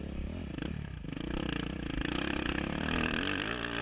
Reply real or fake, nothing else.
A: fake